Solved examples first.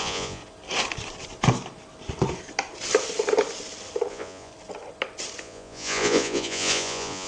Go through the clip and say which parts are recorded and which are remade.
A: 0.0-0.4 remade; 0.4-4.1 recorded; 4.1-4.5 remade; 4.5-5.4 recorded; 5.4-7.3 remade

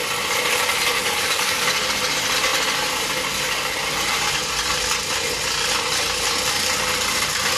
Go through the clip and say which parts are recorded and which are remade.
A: 0.0-1.0 recorded; 1.0-1.7 remade; 1.7-7.6 recorded